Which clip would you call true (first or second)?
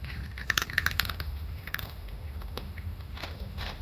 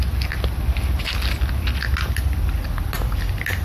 second